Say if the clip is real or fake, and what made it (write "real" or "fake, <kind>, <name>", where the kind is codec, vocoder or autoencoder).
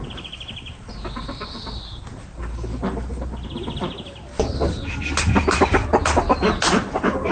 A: real